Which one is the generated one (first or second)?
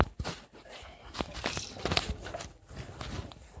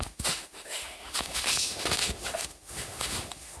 second